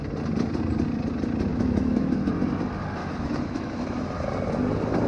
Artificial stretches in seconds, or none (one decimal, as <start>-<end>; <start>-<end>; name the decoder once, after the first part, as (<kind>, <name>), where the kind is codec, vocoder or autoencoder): 1.5-2.3 (autoencoder, DAC-VAE); 3.0-4.0